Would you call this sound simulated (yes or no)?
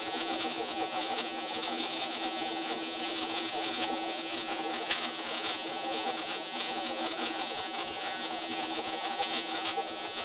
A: yes